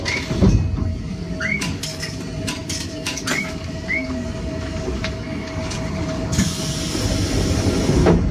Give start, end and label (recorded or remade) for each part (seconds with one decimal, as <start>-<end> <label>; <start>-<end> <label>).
0.0-0.9 recorded; 0.9-2.2 remade; 2.2-2.6 recorded; 2.6-6.6 remade; 6.6-8.3 recorded